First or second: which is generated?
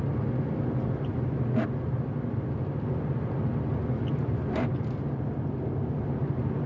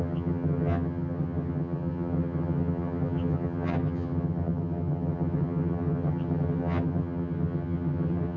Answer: second